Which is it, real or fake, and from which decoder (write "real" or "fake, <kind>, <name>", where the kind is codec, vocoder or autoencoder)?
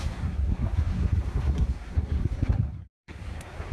fake, codec, SNAC